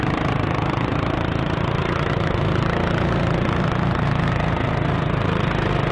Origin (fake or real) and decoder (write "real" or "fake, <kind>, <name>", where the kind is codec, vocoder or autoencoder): fake, vocoder, BigVGAN v2